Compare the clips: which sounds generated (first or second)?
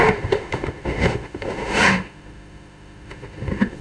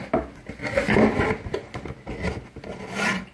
first